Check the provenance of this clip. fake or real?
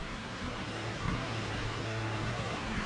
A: fake